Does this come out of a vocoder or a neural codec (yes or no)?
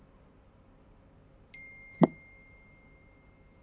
no